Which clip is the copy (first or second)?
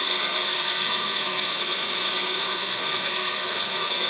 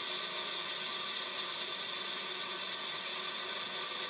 first